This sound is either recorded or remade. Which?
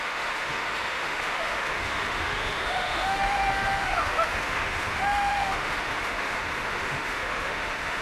remade